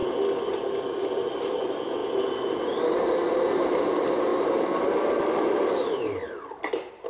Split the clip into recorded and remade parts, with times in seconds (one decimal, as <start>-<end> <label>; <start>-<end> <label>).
0.0-1.5 recorded; 1.5-2.0 remade; 2.0-3.3 recorded; 3.3-4.3 remade; 4.3-5.2 recorded; 5.2-7.1 remade